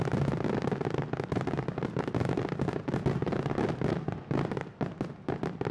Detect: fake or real real